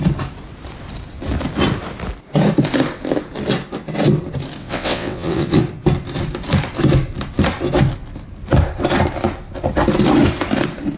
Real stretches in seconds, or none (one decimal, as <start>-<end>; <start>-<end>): 0.0-4.6; 5.6-11.0